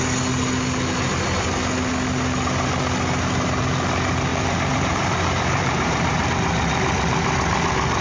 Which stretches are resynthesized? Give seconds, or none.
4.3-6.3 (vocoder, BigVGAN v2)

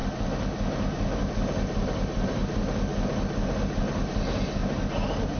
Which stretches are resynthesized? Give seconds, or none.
1.2-2.9 (vocoder, BigVGAN v2); 3.8-4.6